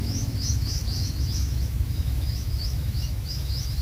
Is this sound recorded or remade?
remade